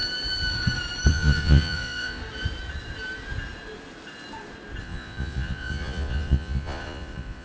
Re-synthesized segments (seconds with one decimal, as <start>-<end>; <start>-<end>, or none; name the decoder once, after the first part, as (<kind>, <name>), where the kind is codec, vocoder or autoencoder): 1.1-2.2 (vocoder, Vocos); 4.8-7.4

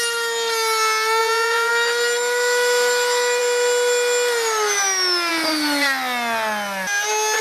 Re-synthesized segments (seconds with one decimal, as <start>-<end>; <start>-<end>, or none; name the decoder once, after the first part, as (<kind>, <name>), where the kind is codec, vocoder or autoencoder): 1.2-1.7 (vocoder, Vocos)

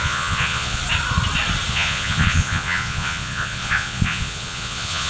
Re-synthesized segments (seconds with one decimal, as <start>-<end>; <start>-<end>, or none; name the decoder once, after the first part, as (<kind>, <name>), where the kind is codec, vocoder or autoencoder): 0.0-0.8 (vocoder, Vocos); 1.7-5.1

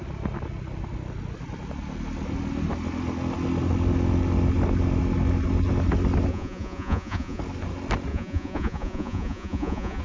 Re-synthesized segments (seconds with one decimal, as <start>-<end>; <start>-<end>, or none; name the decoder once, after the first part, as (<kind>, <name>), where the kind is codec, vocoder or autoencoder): 6.3-7.4 (vocoder, Vocos); 8.1-10.0

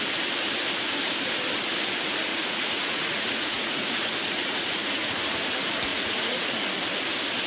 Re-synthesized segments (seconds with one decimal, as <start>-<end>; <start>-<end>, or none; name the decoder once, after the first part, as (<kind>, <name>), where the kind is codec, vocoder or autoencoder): 2.3-5.2 (vocoder, Vocos); 5.9-6.5

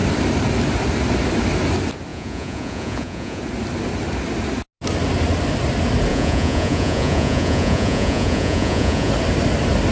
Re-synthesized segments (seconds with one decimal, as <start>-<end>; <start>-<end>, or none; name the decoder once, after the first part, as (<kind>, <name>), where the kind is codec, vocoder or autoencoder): 2.1-3.4 (vocoder, Vocos); 6.1-9.1

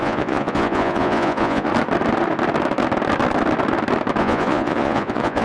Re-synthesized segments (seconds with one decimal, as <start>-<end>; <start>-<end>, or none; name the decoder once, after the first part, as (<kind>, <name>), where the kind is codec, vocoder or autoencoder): 0.0-1.7 (vocoder, Vocos); 4.2-5.4